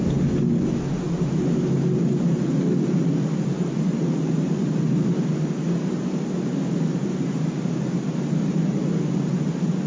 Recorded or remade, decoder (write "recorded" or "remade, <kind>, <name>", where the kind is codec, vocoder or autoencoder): recorded